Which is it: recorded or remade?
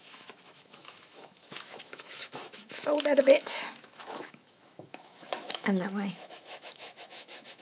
remade